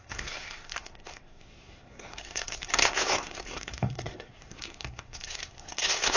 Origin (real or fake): fake